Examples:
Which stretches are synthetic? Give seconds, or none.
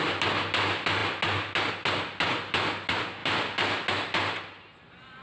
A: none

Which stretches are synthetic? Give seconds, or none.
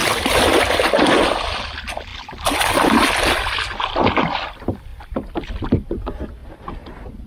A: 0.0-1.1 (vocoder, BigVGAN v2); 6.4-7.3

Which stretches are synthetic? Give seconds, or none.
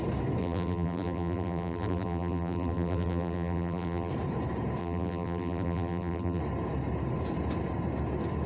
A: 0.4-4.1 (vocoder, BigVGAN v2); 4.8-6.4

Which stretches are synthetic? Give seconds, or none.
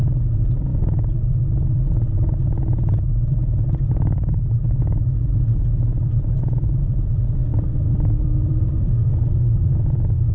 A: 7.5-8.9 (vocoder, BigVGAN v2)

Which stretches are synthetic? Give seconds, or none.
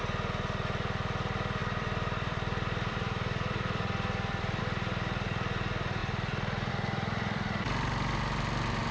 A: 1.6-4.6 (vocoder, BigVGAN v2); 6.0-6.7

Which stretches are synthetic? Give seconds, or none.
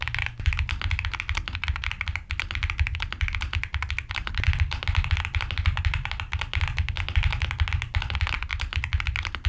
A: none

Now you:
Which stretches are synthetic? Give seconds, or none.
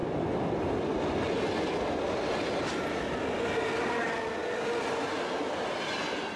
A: none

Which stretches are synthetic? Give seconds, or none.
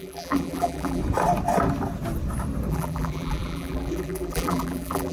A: 0.0-1.0 (vocoder, BigVGAN v2); 2.7-5.1